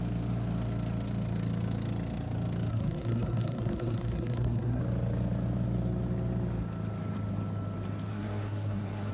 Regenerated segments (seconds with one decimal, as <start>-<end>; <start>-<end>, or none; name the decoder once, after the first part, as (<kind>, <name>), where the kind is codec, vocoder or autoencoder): 2.7-4.8 (codec, SNAC); 8.1-9.1